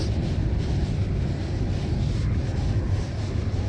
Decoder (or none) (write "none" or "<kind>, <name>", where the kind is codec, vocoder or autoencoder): none